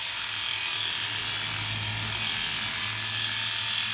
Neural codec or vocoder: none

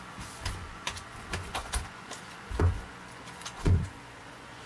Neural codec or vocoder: vocoder, Vocos